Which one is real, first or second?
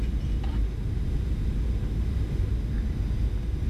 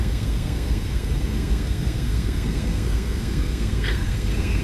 first